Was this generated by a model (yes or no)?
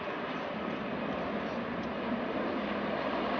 no